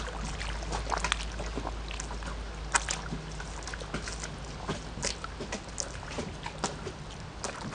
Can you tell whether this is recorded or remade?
recorded